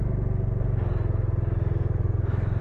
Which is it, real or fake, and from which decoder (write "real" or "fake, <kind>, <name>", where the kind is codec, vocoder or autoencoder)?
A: real